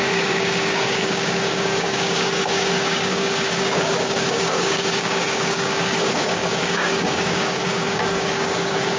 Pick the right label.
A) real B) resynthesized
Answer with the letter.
B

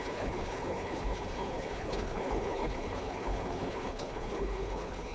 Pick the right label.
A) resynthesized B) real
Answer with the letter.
A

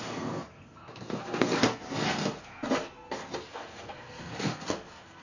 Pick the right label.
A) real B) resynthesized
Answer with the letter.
B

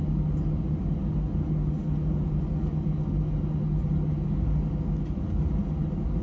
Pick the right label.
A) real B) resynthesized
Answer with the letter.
A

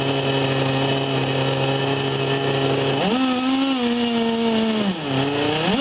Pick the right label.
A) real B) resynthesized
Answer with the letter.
A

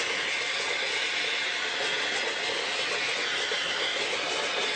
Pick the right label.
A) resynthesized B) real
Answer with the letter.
B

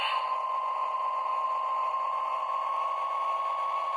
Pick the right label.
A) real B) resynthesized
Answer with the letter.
B